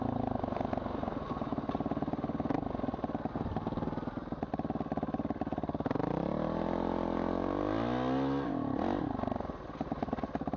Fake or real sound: real